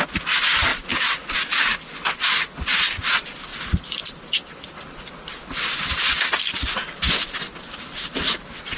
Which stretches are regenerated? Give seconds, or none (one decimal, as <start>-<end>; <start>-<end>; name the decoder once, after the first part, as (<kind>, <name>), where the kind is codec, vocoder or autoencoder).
none